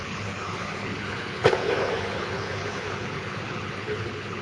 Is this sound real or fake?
fake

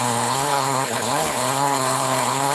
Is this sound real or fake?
fake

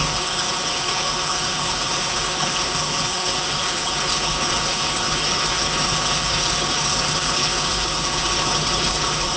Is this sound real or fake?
fake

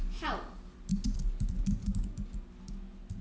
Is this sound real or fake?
real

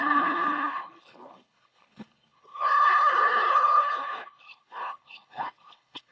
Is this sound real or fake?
fake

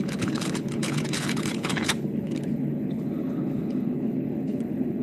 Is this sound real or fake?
fake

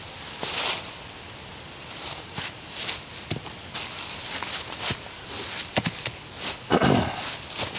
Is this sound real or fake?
real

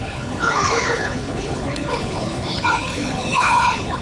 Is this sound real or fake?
fake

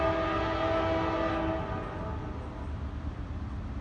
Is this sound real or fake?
real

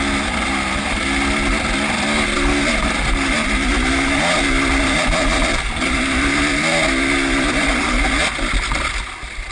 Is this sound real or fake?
real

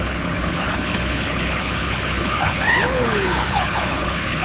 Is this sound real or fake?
fake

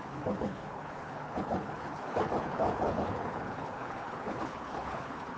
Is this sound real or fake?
fake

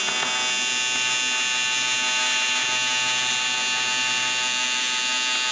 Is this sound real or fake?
real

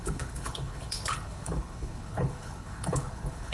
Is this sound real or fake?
fake